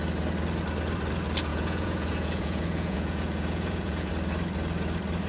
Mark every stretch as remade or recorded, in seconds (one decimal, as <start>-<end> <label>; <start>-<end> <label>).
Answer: 0.0-1.5 recorded; 1.5-4.1 remade; 4.1-5.3 recorded